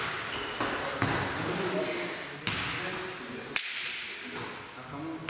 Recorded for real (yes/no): yes